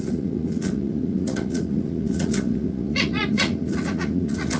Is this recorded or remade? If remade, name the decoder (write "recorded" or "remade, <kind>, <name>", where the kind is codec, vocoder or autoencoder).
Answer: remade, vocoder, Vocos